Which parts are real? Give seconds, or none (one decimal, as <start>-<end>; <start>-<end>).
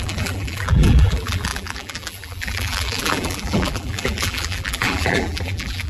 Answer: none